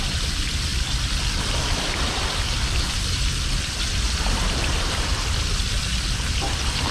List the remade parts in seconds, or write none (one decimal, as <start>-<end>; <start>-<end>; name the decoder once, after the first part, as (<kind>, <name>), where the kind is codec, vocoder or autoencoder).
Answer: none